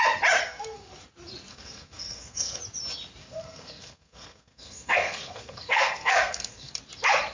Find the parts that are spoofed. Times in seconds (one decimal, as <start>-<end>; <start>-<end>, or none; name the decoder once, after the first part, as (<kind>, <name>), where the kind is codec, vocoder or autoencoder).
0.4-0.9 (codec, SNAC); 1.5-2.6; 3.2-6.7